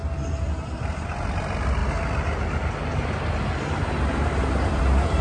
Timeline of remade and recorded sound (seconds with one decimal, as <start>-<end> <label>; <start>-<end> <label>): 0.0-5.2 recorded